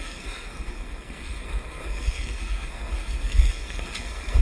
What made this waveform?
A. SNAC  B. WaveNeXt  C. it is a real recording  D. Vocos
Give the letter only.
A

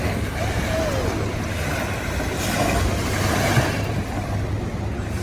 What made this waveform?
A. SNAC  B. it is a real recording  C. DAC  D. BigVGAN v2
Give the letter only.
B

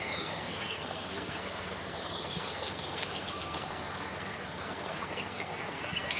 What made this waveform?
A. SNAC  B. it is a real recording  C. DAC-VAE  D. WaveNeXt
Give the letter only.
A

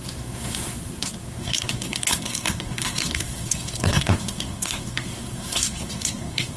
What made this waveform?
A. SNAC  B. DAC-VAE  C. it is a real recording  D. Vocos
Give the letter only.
A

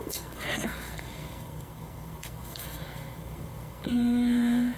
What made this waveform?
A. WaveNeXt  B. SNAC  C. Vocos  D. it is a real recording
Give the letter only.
B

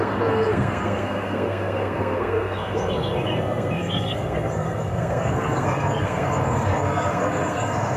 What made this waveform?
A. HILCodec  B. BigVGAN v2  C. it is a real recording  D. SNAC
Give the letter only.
D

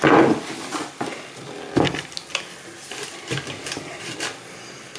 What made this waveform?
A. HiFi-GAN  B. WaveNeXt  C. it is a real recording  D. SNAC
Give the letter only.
C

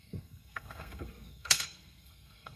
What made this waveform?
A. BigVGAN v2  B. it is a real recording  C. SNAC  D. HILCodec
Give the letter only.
C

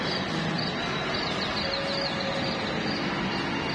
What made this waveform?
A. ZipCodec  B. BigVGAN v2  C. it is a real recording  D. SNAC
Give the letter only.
C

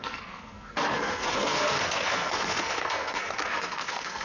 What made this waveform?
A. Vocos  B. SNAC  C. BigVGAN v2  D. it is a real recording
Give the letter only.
B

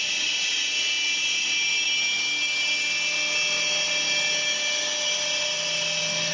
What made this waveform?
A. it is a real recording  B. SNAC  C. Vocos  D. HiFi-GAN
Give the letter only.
A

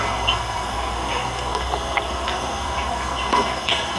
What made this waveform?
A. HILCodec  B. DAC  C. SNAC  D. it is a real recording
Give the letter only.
C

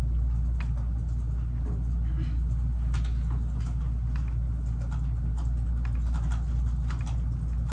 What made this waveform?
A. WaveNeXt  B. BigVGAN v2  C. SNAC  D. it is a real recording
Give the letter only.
D